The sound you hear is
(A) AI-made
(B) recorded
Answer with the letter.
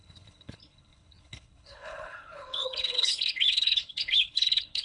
A